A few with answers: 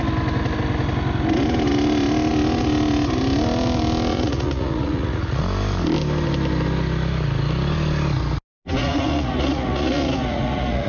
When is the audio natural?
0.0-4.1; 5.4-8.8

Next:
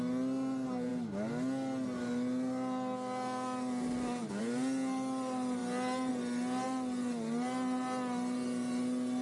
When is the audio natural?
0.0-9.2